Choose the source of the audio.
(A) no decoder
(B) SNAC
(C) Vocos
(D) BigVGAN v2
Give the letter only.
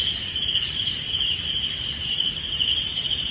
D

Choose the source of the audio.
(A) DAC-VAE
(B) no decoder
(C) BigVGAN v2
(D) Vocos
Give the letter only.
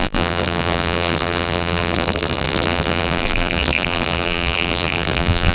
C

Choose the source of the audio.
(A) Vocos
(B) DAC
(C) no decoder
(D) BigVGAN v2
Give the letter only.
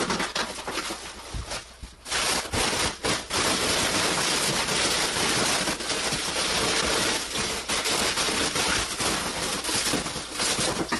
C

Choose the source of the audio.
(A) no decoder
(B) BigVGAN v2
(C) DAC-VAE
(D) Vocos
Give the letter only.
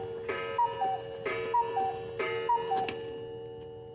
A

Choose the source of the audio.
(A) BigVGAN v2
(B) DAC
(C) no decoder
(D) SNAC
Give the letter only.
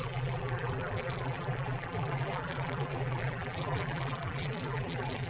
A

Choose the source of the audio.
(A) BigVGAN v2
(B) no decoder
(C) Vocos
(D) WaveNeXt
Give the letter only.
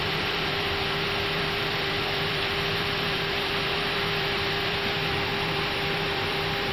A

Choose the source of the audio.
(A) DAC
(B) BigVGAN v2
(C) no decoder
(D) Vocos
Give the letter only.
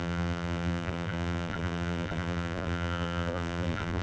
B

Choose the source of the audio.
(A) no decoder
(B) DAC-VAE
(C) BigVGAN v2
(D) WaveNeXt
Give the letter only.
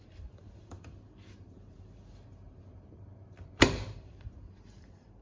C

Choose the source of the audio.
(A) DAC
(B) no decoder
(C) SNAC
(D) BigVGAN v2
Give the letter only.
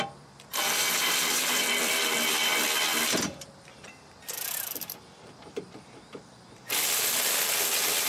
D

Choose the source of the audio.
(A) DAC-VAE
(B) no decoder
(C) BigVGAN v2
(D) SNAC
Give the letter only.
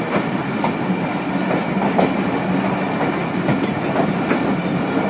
B